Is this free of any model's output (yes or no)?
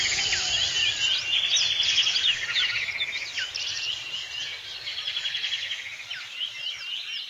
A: yes